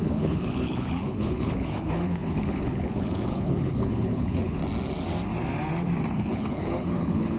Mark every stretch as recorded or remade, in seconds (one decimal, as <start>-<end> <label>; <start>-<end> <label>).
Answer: 0.0-4.6 remade; 4.6-6.1 recorded; 6.1-7.4 remade